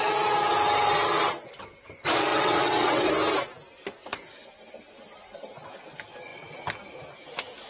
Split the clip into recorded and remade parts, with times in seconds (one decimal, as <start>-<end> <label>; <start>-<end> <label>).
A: 0.0-2.3 recorded; 2.3-3.1 remade; 3.1-7.7 recorded

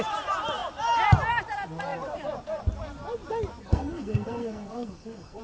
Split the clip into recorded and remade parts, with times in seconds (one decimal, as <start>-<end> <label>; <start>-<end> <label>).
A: 0.0-3.6 recorded; 3.6-5.4 remade

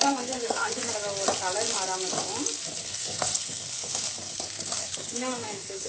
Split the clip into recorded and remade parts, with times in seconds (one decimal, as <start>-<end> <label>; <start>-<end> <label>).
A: 0.0-0.8 remade; 0.8-2.8 recorded; 2.8-5.9 remade

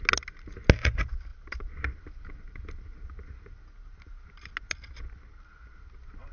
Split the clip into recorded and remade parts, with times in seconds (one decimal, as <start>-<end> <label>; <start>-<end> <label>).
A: 0.0-6.3 recorded

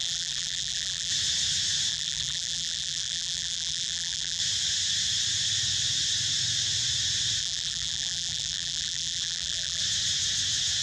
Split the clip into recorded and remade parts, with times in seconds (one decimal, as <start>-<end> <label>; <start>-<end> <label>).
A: 0.0-1.1 remade; 1.1-1.9 recorded; 1.9-4.4 remade; 4.4-7.4 recorded; 7.4-9.8 remade; 9.8-10.8 recorded

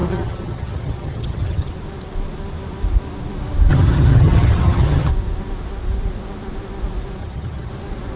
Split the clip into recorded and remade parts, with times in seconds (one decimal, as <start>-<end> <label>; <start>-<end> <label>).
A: 0.0-1.7 remade; 1.7-3.7 recorded; 3.7-5.1 remade; 5.1-7.2 recorded; 7.2-7.7 remade; 7.7-8.2 recorded

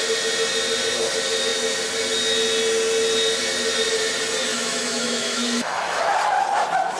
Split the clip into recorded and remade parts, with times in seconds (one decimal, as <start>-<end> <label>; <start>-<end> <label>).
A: 0.0-4.5 recorded; 4.5-6.0 remade; 6.0-7.0 recorded

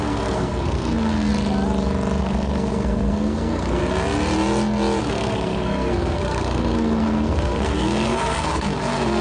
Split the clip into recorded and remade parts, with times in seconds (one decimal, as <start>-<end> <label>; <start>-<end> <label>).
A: 0.0-1.3 remade; 1.3-2.2 recorded; 2.2-3.8 remade; 3.8-5.0 recorded; 5.0-9.2 remade